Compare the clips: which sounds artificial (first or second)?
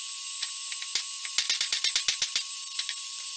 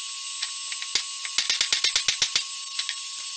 first